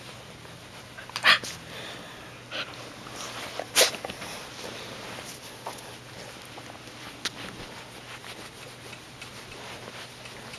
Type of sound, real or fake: real